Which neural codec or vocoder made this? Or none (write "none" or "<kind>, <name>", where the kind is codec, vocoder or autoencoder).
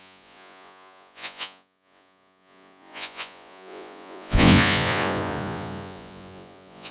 vocoder, Vocos